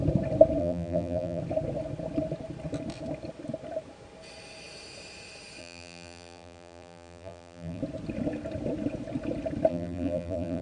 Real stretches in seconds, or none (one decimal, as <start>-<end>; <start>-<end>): 0.0-0.6; 1.4-5.6; 7.8-9.7